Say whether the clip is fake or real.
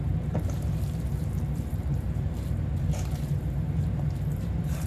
fake